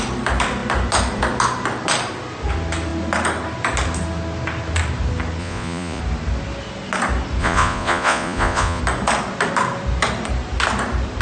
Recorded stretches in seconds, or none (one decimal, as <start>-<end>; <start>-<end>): 0.0-5.4; 6.0-7.4; 8.8-11.2